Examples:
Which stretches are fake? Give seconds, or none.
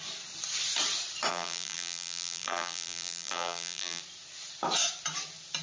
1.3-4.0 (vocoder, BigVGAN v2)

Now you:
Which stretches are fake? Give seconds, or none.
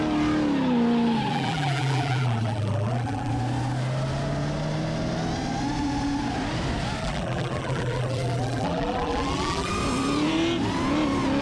1.3-3.3 (vocoder, BigVGAN v2); 7.0-9.7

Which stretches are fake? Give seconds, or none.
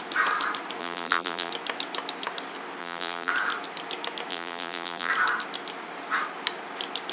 0.8-1.5 (vocoder, BigVGAN v2); 2.8-3.3; 4.3-5.1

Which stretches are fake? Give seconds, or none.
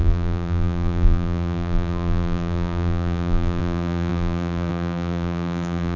0.0-6.0 (vocoder, BigVGAN v2)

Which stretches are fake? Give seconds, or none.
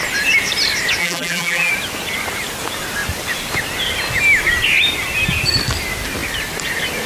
1.0-1.7 (vocoder, BigVGAN v2)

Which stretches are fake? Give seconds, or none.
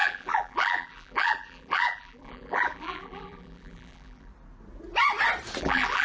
0.0-4.3 (vocoder, BigVGAN v2); 5.6-6.0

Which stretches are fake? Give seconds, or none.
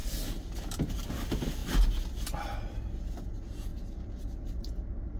0.0-1.1 (vocoder, BigVGAN v2); 3.7-4.4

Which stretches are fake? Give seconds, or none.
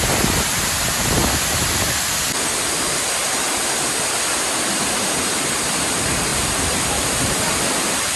6.3-7.5 (vocoder, BigVGAN v2)